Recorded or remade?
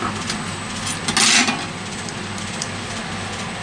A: recorded